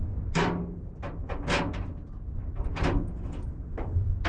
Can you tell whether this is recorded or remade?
recorded